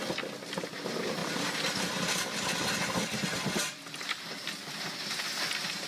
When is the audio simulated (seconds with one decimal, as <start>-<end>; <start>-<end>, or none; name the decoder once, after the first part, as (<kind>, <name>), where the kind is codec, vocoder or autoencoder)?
none